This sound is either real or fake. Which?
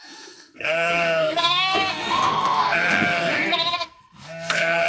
fake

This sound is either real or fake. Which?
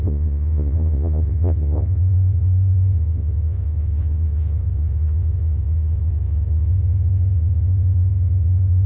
fake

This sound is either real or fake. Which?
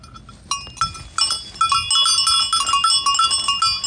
real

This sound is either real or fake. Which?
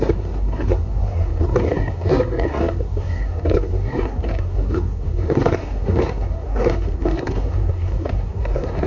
fake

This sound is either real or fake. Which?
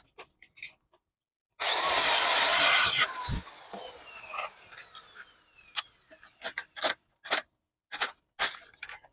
real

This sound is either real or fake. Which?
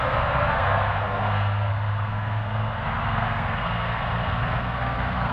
fake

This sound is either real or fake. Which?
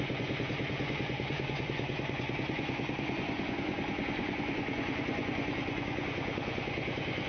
fake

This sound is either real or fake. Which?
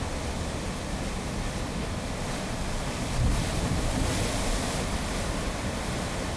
real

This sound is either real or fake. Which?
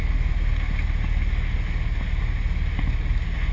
real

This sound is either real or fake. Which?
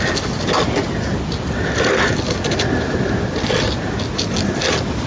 real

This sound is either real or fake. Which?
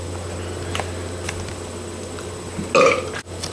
real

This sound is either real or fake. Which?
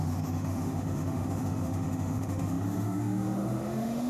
fake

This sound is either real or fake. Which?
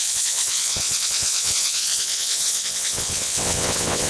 fake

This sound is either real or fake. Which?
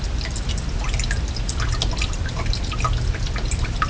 real